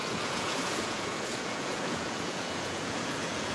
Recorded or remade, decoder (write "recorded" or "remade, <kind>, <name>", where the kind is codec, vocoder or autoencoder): remade, vocoder, Vocos